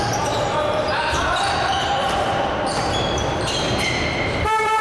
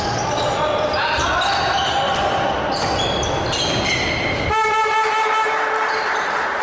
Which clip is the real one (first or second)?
second